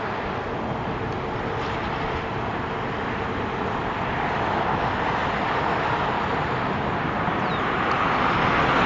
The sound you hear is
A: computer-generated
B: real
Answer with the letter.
B